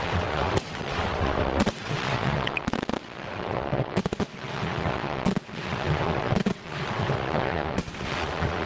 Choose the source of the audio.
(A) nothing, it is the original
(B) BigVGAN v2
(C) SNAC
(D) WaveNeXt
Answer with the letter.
D